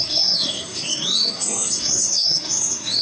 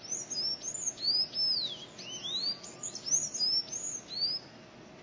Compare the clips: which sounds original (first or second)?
second